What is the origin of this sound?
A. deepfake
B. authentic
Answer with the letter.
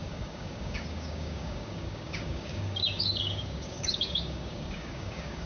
A